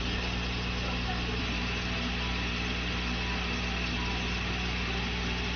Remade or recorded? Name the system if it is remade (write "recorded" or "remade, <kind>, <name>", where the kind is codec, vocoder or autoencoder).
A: recorded